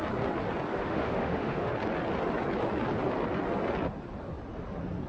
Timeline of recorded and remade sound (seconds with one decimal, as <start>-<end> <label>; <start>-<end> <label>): 0.0-0.7 recorded; 0.7-1.7 remade; 1.7-5.1 recorded